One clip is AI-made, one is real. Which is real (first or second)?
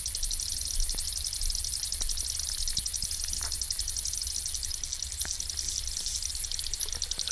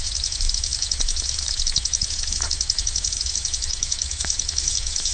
first